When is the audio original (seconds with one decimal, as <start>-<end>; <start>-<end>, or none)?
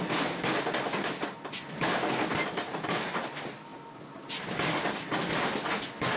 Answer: 0.0-6.2